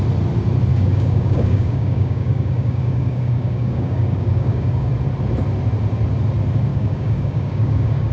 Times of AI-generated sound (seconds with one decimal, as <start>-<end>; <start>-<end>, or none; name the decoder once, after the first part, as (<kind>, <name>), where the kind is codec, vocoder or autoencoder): 0.7-4.9 (codec, DAC); 6.7-8.1